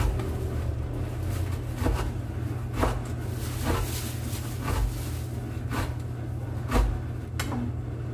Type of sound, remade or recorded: recorded